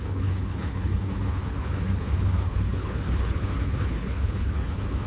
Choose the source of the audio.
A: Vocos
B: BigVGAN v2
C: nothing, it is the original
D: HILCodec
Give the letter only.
D